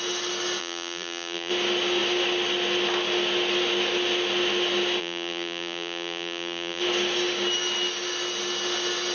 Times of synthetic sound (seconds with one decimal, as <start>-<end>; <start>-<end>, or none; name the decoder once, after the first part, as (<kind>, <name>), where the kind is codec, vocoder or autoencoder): 0.6-1.5 (vocoder, BigVGAN v2); 5.0-6.8